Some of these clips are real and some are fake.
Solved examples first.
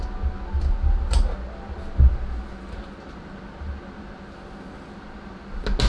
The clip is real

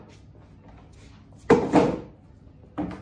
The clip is real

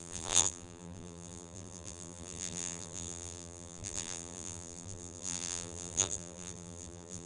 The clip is fake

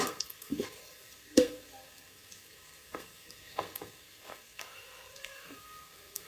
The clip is fake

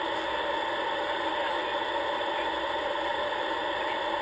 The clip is real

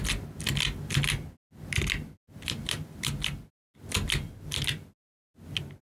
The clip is real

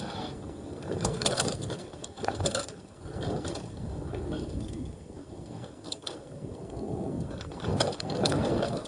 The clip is fake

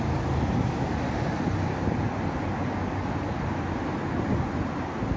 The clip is real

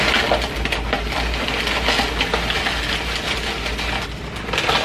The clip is real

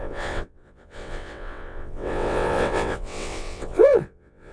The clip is fake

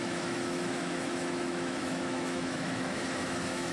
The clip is fake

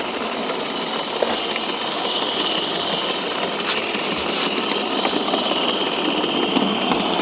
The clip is real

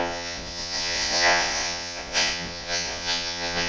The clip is fake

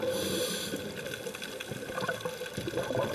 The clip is real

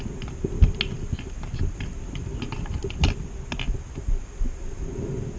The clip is real